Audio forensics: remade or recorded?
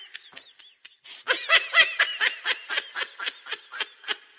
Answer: recorded